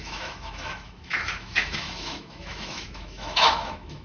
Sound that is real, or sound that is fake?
fake